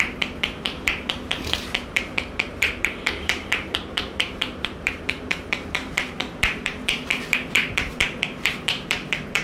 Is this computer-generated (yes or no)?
yes